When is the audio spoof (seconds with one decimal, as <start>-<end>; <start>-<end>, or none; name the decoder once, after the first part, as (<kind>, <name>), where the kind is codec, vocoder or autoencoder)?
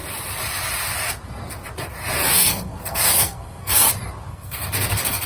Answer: 2.2-3.9 (codec, SNAC); 4.3-5.3